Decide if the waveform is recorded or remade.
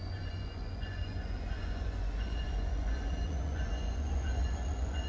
remade